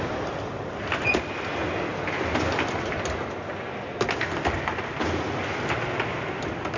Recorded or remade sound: recorded